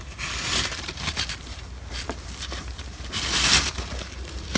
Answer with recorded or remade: recorded